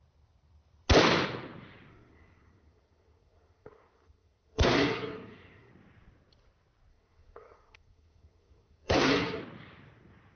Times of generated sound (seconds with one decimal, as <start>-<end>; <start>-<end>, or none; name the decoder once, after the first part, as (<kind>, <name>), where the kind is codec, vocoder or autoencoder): 1.9-5.7 (codec, SNAC); 6.9-9.4